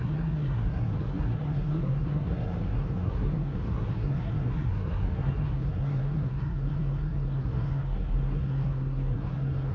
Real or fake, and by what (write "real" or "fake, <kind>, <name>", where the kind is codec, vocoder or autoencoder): fake, codec, SNAC